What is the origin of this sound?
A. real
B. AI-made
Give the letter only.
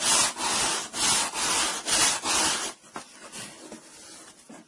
A